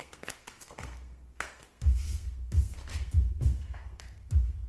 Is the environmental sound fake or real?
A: fake